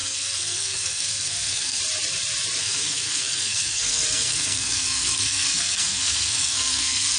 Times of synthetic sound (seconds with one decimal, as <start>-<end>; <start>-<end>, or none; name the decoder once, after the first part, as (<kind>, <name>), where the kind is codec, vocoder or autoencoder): 0.0-1.8 (codec, SNAC); 2.6-7.2